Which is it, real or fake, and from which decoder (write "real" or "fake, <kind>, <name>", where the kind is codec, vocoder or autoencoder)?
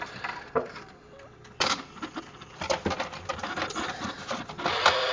real